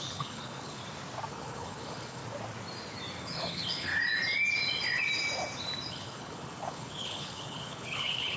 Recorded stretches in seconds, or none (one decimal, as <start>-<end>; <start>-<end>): 0.8-1.3; 2.2-3.2; 3.9-5.9